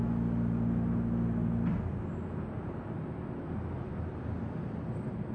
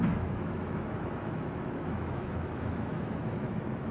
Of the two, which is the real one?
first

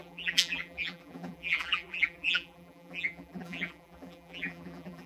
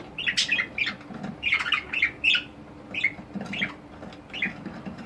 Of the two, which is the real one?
second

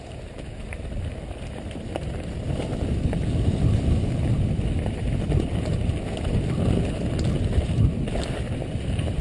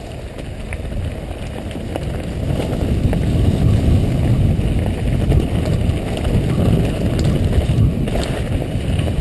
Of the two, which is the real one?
second